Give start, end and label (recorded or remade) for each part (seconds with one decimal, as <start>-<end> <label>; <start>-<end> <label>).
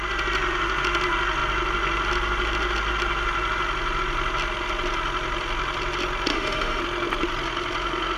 0.0-6.3 recorded; 6.3-6.8 remade; 6.8-8.2 recorded